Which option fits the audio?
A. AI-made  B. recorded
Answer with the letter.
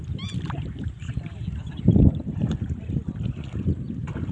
B